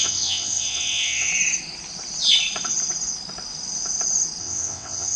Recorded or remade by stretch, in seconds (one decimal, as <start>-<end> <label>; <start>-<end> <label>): 0.0-1.3 remade; 1.3-4.4 recorded; 4.4-5.2 remade